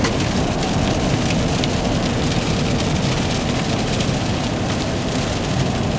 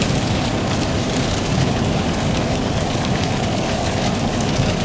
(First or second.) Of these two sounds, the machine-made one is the second